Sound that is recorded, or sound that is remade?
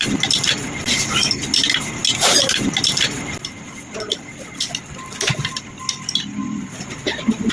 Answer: recorded